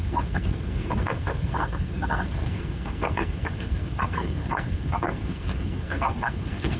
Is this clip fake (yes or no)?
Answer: yes